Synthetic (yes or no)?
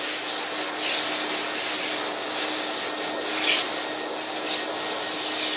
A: no